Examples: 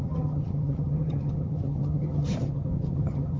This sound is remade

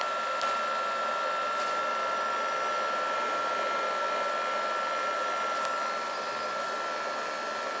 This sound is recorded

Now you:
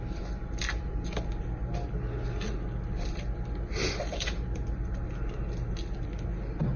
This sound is recorded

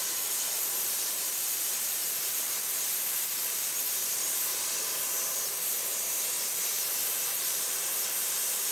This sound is remade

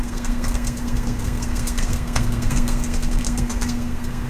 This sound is remade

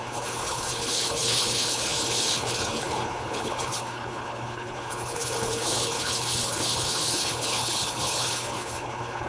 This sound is remade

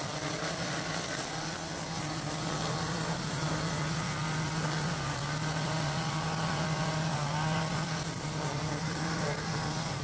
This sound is recorded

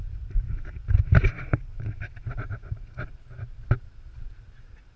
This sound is remade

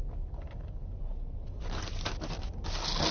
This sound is recorded